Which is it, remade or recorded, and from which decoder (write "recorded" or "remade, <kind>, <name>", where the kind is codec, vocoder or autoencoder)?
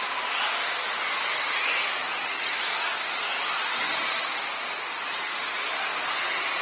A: recorded